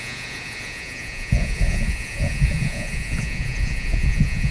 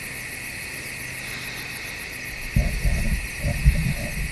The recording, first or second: second